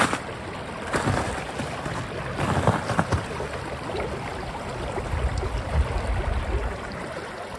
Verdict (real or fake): real